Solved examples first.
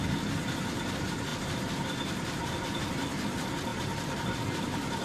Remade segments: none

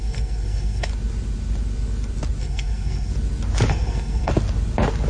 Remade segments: 0.0-0.9 (codec, SNAC); 2.4-3.1; 3.7-4.3

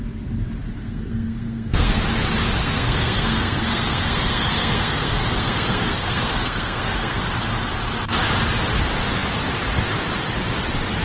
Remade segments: 0.8-2.0 (codec, SNAC); 2.6-7.2

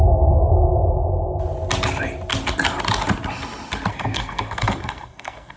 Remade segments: 0.0-0.5 (codec, SNAC); 3.9-5.6